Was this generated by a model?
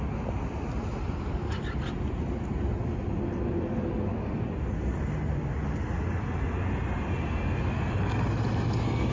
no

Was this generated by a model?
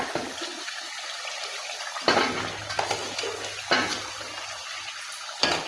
no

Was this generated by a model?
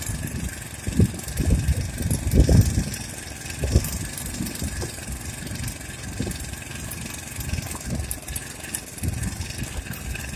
no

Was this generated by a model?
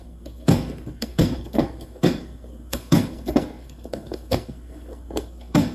yes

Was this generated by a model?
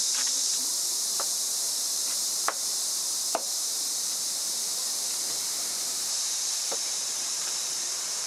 yes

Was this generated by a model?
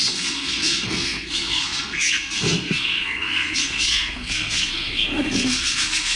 yes